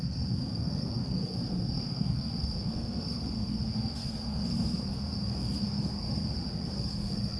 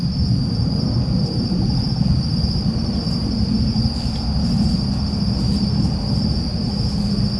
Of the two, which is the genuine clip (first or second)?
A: second